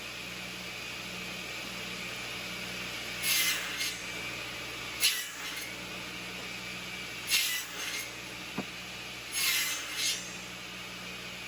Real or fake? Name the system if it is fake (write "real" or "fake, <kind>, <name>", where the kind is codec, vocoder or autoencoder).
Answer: real